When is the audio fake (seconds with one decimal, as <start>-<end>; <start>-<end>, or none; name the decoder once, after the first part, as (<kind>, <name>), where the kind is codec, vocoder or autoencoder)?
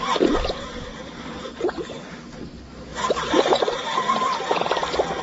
none